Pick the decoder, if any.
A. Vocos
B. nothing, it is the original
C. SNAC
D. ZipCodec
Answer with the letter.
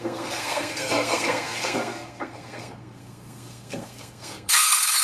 C